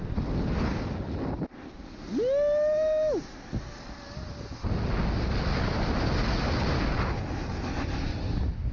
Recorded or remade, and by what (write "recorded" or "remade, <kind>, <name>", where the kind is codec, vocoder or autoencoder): recorded